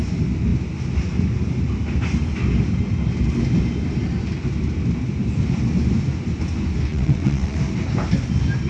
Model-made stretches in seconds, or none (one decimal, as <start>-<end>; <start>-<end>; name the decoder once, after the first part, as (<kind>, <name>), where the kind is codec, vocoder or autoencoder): 6.9-7.6 (vocoder, WaveNeXt)

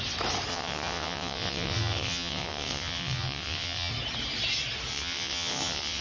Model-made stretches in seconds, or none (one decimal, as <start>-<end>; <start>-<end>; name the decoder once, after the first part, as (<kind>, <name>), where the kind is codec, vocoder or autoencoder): 0.5-3.9 (vocoder, WaveNeXt); 4.9-6.0

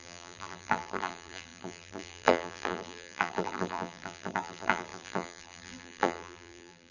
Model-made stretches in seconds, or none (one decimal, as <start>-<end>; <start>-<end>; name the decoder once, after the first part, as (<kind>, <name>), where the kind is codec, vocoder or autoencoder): 0.0-6.9 (vocoder, BigVGAN v2)

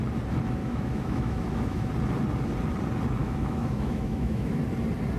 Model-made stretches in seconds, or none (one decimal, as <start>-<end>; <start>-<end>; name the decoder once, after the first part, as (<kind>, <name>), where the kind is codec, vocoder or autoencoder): 0.6-1.9 (autoencoder, DAC-VAE); 3.2-4.6